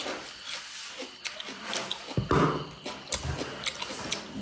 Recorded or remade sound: recorded